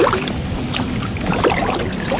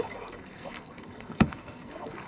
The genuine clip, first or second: first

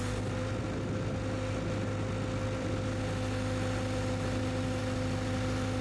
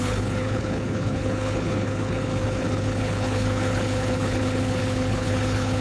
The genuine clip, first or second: first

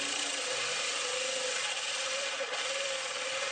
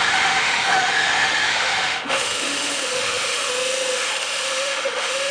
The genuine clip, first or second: first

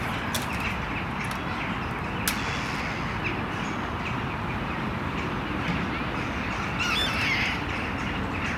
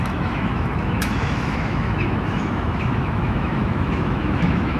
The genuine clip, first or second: first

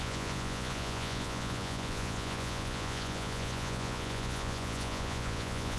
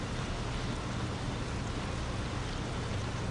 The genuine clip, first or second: second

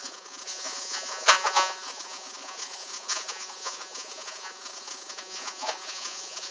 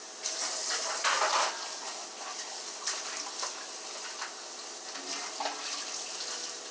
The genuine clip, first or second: second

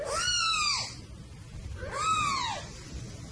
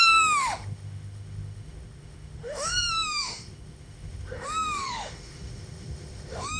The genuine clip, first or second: first